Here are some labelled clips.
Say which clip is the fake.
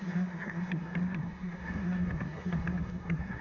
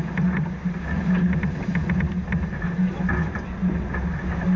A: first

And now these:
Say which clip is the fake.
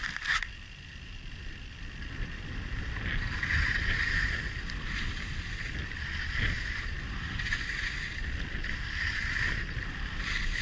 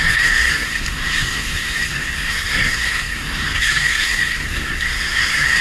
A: second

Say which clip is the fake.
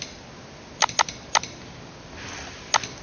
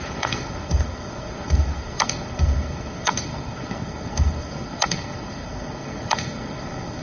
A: second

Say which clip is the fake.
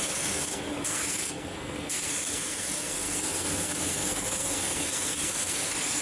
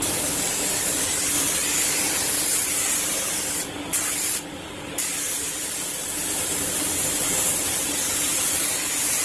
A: first